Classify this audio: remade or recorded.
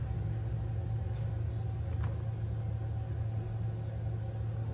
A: recorded